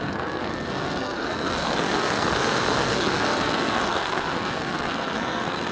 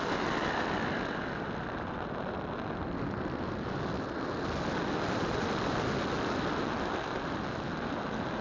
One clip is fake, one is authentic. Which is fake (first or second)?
first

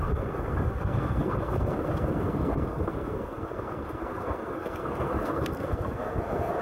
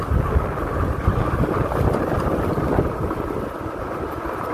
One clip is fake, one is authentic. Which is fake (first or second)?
first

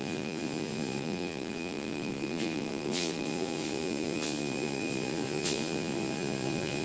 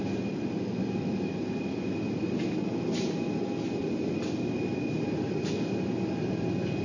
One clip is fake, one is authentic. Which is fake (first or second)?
first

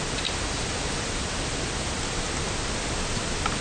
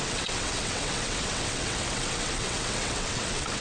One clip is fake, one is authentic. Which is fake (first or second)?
second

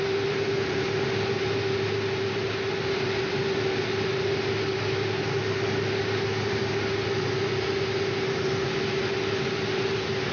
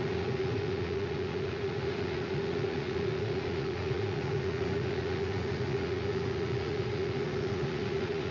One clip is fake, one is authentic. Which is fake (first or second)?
second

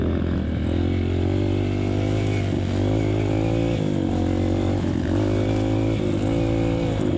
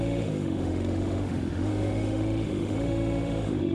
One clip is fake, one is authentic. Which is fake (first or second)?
second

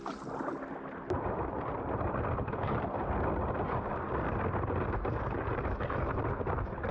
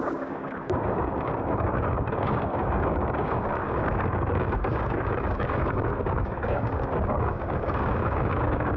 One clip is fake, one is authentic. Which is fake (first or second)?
second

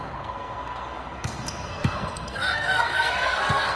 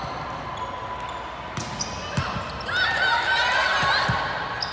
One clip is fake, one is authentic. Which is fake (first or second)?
first